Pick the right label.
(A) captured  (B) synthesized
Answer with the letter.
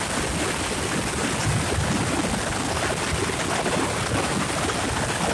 A